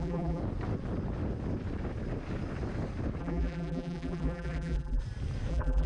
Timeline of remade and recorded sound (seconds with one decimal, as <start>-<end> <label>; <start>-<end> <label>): 0.0-0.4 remade; 0.4-3.2 recorded; 3.2-5.0 remade; 5.0-5.5 recorded; 5.5-5.9 remade